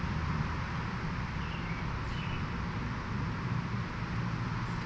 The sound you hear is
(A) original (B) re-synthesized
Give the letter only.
A